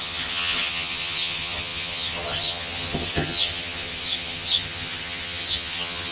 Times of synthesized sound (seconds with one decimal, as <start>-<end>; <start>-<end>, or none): 0.0-6.1

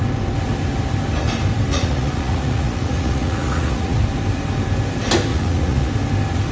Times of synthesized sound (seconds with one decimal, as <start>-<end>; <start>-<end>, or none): 1.7-4.0; 5.3-5.9

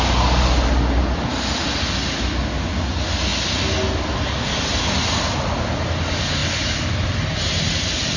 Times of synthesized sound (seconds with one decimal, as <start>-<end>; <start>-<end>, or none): none

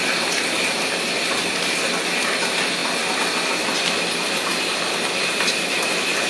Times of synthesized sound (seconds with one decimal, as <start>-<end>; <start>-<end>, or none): none

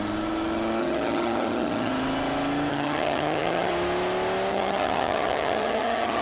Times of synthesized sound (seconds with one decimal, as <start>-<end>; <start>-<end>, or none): 0.8-1.9; 2.7-3.7; 4.5-6.2

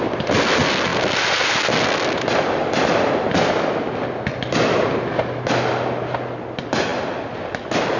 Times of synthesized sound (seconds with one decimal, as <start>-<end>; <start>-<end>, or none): none

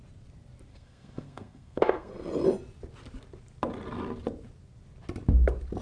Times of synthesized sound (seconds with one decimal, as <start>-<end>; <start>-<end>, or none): 0.7-2.1

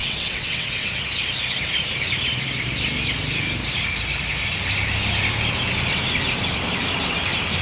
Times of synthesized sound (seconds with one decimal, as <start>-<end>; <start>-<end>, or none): 0.0-1.0